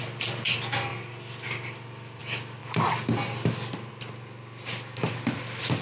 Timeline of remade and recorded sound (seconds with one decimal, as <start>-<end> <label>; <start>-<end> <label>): 0.0-5.8 recorded